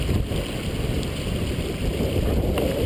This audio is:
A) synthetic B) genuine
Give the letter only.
B